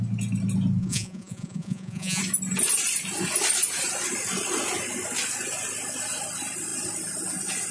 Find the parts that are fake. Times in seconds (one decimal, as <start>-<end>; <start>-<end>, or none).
0.8-2.2